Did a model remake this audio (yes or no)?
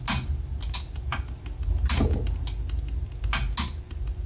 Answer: no